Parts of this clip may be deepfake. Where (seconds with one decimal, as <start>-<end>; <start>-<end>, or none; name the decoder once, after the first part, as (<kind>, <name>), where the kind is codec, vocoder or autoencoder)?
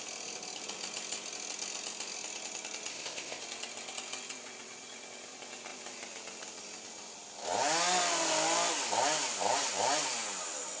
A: 2.9-3.4 (codec, ZipCodec)